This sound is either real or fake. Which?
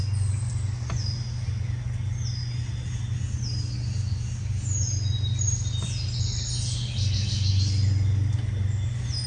real